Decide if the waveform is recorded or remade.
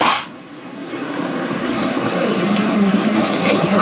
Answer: remade